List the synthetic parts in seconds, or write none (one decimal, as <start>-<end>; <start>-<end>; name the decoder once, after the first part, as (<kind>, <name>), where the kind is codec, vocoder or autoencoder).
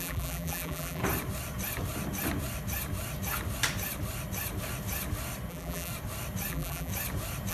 0.0-1.0 (vocoder, BigVGAN v2); 5.5-5.9; 6.5-6.9